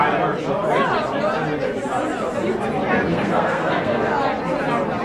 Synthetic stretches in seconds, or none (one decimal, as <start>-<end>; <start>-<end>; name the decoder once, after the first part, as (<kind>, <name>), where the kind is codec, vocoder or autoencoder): 3.1-4.1 (codec, SNAC)